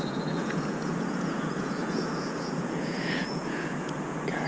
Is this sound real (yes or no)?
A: no